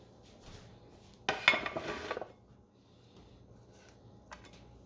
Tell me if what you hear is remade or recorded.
recorded